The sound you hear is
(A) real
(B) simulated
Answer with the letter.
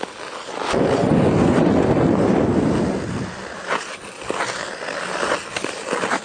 A